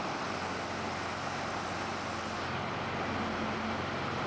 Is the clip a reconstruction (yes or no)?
no